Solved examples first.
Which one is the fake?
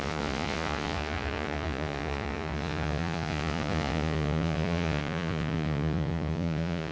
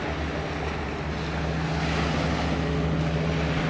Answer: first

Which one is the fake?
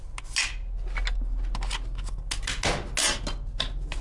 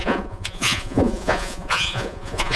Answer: second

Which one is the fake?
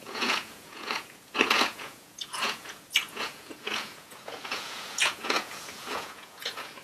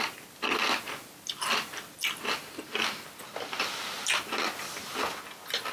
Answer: first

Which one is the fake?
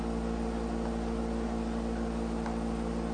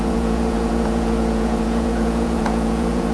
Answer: second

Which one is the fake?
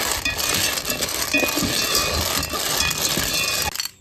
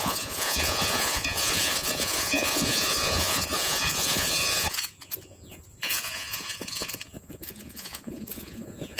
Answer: second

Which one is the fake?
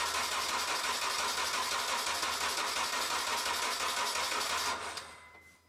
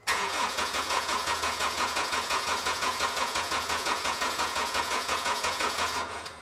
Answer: second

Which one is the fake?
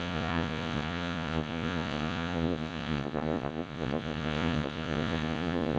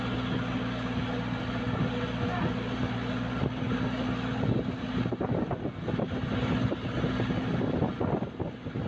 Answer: first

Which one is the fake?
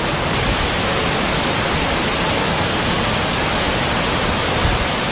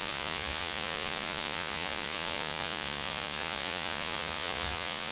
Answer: second